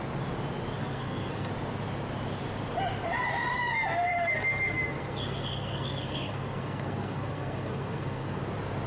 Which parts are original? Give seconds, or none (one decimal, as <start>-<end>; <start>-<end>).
0.0-0.8; 1.5-4.1; 8.4-8.9